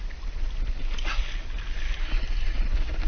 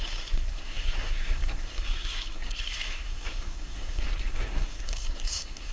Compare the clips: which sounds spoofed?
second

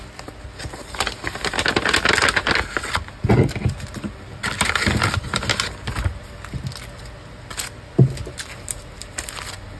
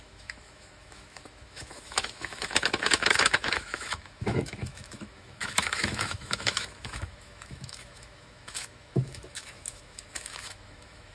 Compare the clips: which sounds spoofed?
second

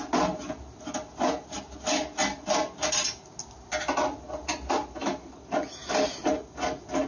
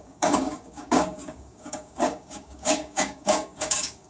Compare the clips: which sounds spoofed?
second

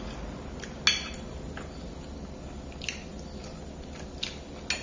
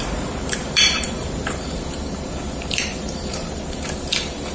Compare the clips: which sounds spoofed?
second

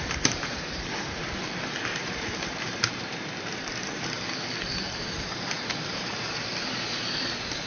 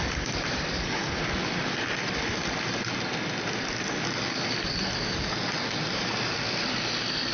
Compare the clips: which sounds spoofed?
first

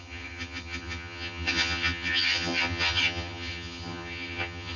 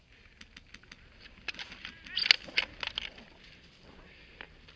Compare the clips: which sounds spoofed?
first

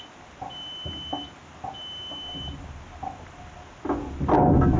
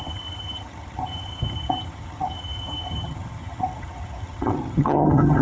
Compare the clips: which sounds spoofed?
second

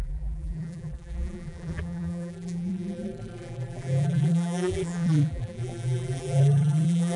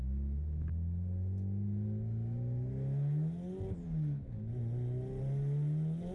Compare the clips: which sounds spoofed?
first